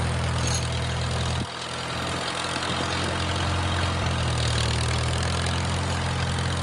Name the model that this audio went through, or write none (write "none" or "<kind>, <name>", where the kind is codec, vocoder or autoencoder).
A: none